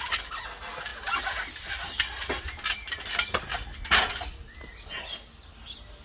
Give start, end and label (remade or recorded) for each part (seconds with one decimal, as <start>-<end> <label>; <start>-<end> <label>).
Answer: 0.0-6.0 recorded

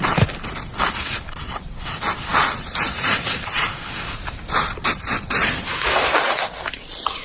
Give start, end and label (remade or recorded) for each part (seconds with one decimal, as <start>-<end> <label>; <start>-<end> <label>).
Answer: 0.0-7.2 recorded